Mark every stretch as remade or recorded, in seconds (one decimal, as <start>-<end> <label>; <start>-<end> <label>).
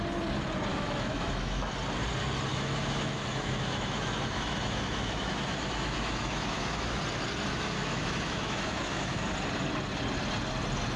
0.0-0.7 recorded; 0.7-1.7 remade; 1.7-2.5 recorded; 2.5-7.0 remade; 7.0-7.5 recorded; 7.5-9.2 remade; 9.2-11.0 recorded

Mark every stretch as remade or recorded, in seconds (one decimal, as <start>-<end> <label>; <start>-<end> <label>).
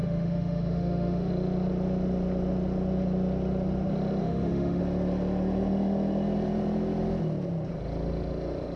0.0-1.3 remade; 1.3-4.2 recorded; 4.2-4.8 remade; 4.8-8.8 recorded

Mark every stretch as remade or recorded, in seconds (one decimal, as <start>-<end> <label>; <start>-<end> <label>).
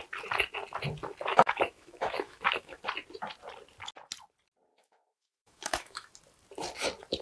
0.0-1.3 recorded; 1.3-2.8 remade; 2.8-4.7 recorded; 4.7-6.1 remade; 6.1-7.2 recorded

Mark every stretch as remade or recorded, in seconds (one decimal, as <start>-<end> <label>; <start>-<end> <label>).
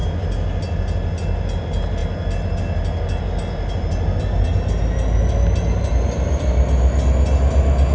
0.0-7.9 recorded